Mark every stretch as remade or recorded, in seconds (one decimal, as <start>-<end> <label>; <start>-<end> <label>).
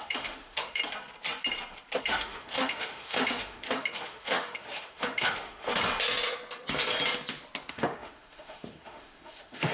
0.0-0.8 remade; 0.8-2.0 recorded; 2.0-5.7 remade; 5.7-7.7 recorded; 7.7-9.7 remade